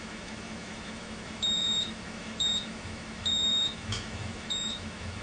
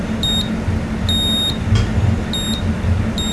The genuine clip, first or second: second